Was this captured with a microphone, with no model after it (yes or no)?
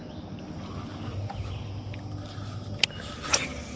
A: yes